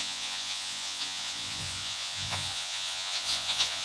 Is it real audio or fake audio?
fake